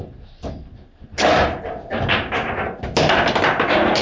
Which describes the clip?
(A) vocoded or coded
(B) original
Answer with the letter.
B